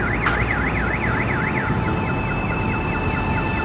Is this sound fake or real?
real